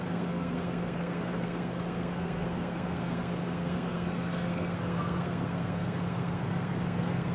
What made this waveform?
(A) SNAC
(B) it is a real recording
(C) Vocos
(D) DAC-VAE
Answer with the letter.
A